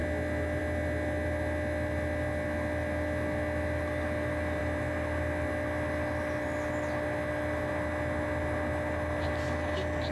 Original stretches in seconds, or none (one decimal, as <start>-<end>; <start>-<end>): 0.0-10.1